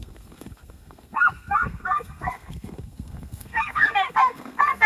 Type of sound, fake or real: fake